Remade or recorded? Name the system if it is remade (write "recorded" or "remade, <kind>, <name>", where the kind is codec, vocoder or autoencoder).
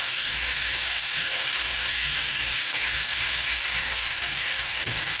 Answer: remade, codec, DAC